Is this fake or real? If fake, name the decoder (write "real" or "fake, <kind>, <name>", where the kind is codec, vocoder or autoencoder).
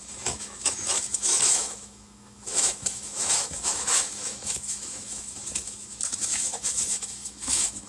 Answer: fake, autoencoder, DAC-VAE